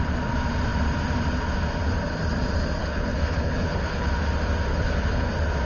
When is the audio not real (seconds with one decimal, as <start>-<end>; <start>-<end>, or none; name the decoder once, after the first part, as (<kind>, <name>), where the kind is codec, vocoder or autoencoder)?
2.8-4.1 (codec, HILCodec); 4.7-5.3